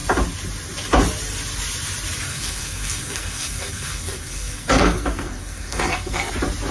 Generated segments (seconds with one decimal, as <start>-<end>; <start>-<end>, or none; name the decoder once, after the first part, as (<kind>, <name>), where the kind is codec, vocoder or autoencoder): 2.3-6.3 (codec, SNAC)